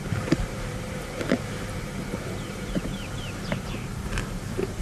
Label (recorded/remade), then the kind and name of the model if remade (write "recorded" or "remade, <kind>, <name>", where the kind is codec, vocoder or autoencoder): remade, vocoder, BigVGAN v2